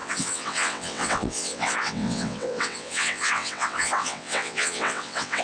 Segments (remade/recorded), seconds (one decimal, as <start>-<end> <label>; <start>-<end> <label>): 0.0-5.4 remade